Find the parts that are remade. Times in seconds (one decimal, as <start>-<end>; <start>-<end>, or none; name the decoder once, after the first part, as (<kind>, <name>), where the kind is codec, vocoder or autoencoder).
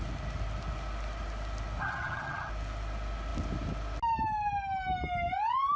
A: 1.8-2.5 (vocoder, HiFi-GAN)